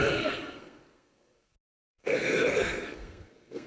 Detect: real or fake fake